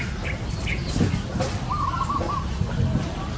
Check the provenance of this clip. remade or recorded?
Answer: recorded